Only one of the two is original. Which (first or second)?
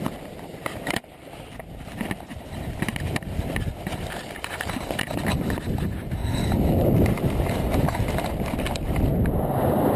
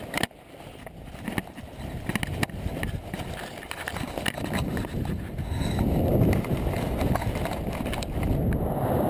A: second